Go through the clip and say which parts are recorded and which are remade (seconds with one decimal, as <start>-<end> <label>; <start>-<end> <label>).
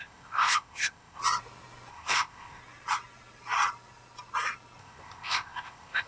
0.0-1.2 remade; 1.2-1.9 recorded; 1.9-2.6 remade; 2.6-4.8 recorded; 4.8-6.1 remade